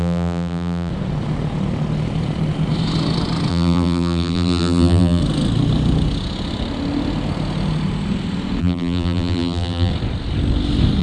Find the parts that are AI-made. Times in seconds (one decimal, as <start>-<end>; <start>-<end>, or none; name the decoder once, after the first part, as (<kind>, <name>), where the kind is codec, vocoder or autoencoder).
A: 0.0-0.9 (vocoder, BigVGAN v2); 3.5-5.2; 8.6-9.9